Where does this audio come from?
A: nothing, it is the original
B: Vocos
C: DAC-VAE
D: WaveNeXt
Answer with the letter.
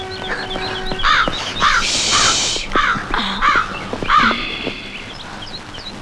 A